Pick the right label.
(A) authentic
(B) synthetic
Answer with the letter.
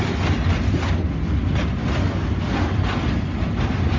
A